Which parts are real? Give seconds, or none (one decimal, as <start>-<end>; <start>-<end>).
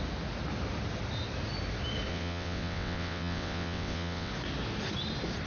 0.0-2.1; 4.3-5.5